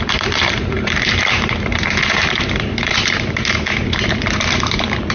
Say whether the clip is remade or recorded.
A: remade